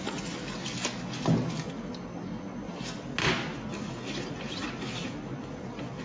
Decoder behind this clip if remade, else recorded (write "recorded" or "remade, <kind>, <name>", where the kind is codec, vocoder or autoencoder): recorded